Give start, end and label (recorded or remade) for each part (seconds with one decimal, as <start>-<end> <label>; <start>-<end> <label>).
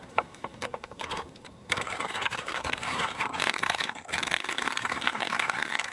0.0-5.9 remade